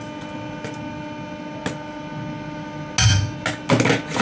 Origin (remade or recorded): recorded